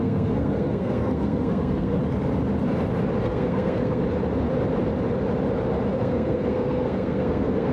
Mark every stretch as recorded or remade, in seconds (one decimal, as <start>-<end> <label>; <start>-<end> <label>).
0.0-2.0 remade; 2.0-3.2 recorded; 3.2-4.0 remade; 4.0-5.9 recorded; 5.9-7.7 remade

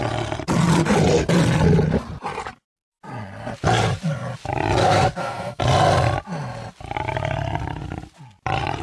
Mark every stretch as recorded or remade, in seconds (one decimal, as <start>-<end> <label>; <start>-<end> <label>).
0.0-4.8 recorded; 4.8-5.6 remade; 5.6-8.8 recorded

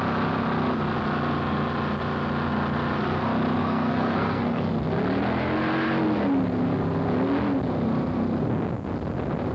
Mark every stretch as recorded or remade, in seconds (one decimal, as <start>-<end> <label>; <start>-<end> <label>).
0.0-3.6 recorded; 3.6-4.7 remade; 4.7-9.5 recorded

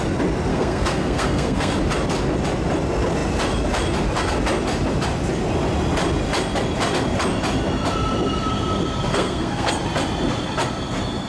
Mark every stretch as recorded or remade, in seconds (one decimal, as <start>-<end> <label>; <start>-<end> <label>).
0.0-0.5 recorded; 0.5-1.7 remade; 1.7-9.1 recorded; 9.1-9.7 remade; 9.7-11.3 recorded

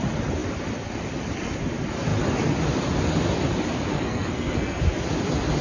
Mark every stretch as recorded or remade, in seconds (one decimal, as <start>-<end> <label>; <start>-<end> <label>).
0.0-3.9 recorded; 3.9-4.8 remade; 4.8-5.6 recorded

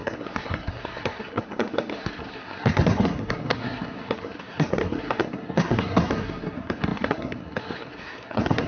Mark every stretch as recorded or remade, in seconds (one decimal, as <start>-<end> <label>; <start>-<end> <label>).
0.0-8.7 remade